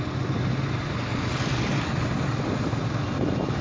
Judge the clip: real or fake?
real